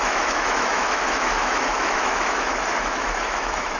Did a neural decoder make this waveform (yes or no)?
yes